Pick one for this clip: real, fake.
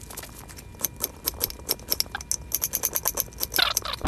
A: real